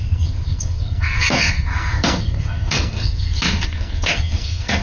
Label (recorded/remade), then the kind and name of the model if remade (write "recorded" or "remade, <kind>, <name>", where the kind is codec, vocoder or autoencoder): remade, codec, SNAC